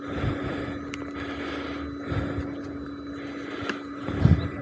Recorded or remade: recorded